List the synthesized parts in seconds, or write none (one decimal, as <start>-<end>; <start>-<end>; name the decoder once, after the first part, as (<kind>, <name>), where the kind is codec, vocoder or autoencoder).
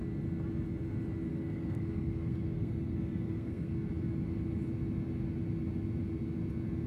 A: 1.3-3.9 (codec, SNAC)